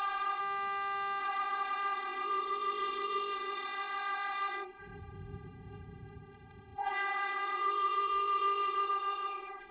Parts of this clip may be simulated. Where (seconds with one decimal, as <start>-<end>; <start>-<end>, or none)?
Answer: 0.0-0.4; 1.2-9.7